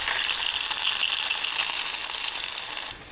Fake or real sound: real